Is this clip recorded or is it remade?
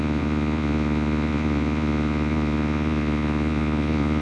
remade